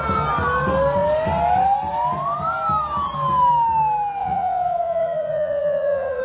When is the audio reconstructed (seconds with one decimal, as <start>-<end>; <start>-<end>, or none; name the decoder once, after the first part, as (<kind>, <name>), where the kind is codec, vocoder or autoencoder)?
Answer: 4.2-6.2 (vocoder, Vocos)